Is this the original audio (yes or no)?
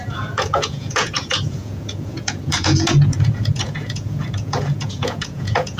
no